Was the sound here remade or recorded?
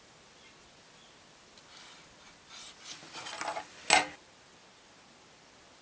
recorded